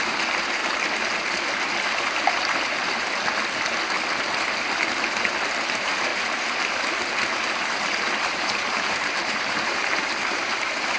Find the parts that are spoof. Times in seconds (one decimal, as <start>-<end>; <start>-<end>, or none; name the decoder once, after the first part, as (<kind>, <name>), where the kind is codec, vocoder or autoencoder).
0.0-0.6 (vocoder, BigVGAN v2); 5.6-11.0